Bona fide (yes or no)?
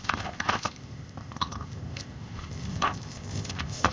no